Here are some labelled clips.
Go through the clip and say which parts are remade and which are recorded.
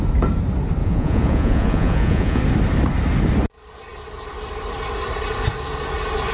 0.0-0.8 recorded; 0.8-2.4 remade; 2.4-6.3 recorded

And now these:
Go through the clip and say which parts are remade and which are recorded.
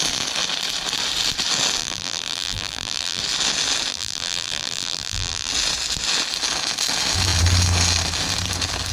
0.0-1.8 recorded; 1.8-3.2 remade; 3.2-3.9 recorded; 3.9-5.5 remade; 5.5-8.9 recorded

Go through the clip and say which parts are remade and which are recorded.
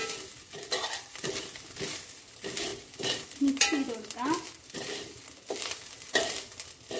0.0-7.0 recorded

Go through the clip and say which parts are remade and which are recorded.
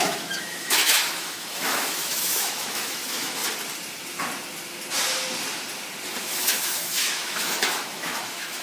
0.0-3.4 remade; 3.4-6.2 recorded; 6.2-8.6 remade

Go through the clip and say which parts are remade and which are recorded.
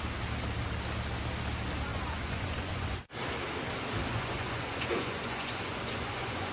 0.0-1.9 recorded; 1.9-3.1 remade; 3.1-4.1 recorded; 4.1-6.5 remade